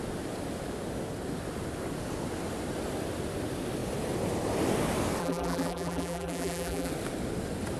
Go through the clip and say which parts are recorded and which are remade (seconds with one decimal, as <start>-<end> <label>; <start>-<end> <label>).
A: 0.0-5.2 recorded; 5.2-6.9 remade; 6.9-7.8 recorded